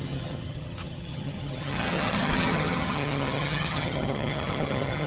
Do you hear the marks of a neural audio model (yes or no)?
yes